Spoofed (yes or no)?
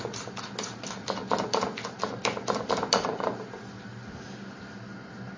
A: no